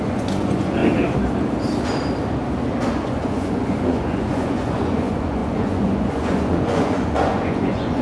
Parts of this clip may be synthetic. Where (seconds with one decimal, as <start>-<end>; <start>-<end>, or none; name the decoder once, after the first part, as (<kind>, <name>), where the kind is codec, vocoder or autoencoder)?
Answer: 0.0-0.8 (vocoder, Vocos); 2.9-8.0